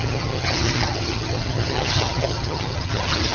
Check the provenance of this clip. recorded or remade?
remade